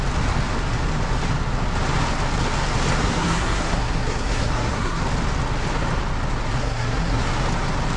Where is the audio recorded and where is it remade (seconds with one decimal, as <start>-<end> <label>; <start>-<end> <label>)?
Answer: 0.0-3.0 recorded; 3.0-5.0 remade; 5.0-6.6 recorded; 6.6-7.2 remade; 7.2-8.0 recorded